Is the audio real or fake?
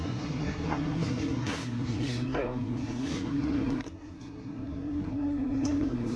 fake